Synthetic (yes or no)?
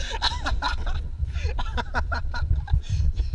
no